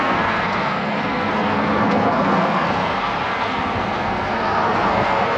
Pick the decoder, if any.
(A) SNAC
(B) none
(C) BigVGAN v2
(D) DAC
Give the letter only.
A